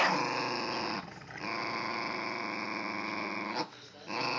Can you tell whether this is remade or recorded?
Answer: recorded